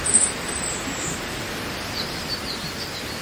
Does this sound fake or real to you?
real